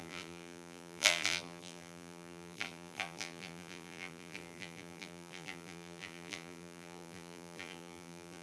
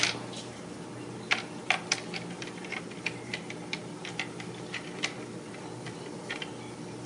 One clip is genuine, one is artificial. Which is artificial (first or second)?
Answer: first